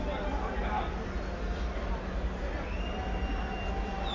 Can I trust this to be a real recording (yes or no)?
yes